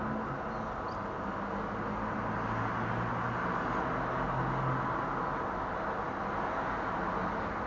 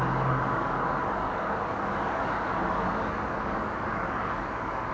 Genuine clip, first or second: first